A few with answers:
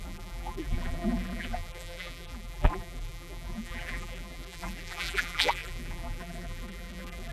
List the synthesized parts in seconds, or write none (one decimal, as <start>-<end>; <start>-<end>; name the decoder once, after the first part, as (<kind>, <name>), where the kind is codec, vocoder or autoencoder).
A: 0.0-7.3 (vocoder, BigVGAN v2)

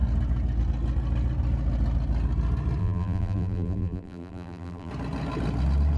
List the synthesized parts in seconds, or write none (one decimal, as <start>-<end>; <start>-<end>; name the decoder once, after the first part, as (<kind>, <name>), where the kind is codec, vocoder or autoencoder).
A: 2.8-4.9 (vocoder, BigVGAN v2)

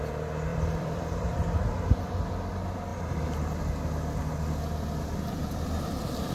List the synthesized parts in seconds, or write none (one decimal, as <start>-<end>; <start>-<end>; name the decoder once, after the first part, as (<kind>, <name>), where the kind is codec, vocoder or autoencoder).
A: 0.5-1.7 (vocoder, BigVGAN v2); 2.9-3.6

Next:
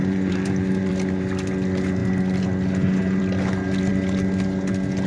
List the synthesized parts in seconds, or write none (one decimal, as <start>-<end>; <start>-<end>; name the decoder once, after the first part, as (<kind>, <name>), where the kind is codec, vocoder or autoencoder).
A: 0.0-0.9 (vocoder, BigVGAN v2)

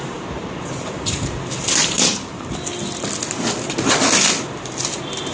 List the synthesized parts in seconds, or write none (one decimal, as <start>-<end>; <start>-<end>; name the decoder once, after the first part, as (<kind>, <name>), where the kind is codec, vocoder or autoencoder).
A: 0.0-2.7 (vocoder, BigVGAN v2)